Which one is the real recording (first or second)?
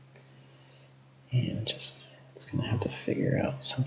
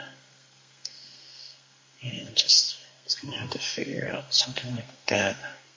first